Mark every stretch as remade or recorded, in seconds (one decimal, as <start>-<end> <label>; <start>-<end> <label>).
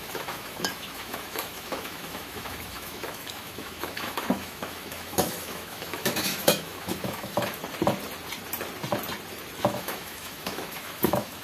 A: 0.0-7.6 remade; 7.6-9.6 recorded; 9.6-11.4 remade